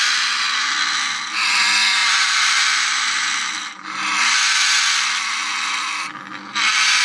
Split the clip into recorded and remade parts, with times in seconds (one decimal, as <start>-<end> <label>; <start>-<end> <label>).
0.0-2.0 recorded; 2.0-4.6 remade; 4.6-7.0 recorded